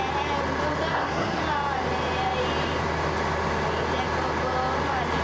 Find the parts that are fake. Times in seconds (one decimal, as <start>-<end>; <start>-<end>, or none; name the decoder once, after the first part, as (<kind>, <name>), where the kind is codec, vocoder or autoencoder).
0.9-1.4 (codec, SNAC)

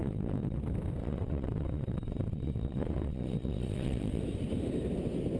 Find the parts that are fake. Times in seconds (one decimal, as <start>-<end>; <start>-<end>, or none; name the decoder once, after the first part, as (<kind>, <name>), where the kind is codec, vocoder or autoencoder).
0.0-0.6 (vocoder, WaveNeXt); 1.0-4.2

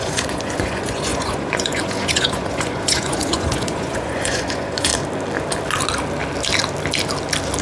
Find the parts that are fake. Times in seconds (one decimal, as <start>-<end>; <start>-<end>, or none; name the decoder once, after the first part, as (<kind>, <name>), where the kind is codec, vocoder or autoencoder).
0.0-4.9 (vocoder, Vocos)

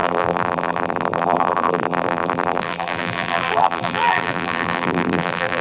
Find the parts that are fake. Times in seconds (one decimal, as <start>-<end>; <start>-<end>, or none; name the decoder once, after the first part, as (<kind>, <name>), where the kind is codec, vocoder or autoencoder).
0.0-5.6 (vocoder, BigVGAN v2)